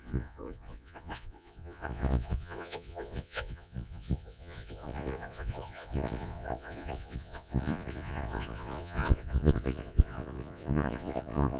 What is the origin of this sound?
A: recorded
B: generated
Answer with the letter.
B